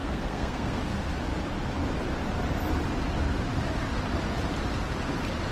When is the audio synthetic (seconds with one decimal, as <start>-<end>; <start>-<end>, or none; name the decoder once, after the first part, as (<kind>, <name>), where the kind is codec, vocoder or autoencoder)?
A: 0.0-0.8 (codec, SNAC)